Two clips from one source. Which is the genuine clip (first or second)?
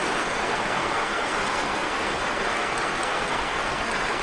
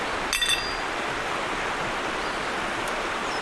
second